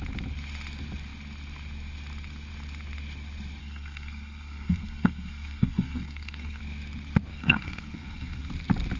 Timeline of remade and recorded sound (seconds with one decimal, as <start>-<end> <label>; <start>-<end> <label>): 0.0-3.6 recorded; 3.6-6.6 remade; 6.6-7.3 recorded; 7.3-8.5 remade; 8.5-9.0 recorded